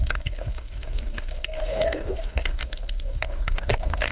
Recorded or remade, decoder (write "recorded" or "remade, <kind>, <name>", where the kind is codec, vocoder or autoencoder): remade, codec, DAC